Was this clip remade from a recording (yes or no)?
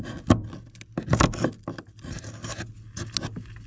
no